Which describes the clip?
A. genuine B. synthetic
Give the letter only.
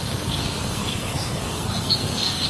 B